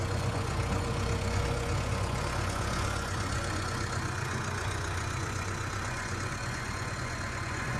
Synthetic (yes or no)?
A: yes